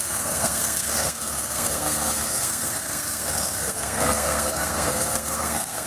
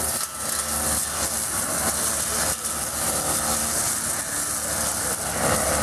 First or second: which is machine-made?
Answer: first